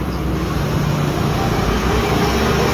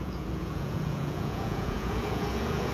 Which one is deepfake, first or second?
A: second